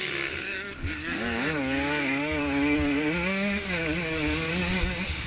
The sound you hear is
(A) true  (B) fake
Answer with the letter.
B